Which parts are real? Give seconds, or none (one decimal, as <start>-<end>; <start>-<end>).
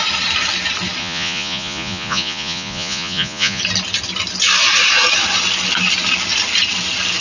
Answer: 0.0-1.0; 3.6-7.2